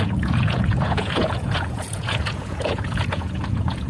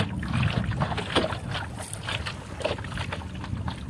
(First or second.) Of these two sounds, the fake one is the first